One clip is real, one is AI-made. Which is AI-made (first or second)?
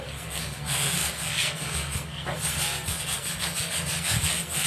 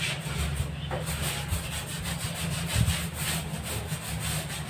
first